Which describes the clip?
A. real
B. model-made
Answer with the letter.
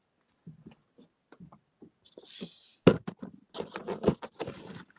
A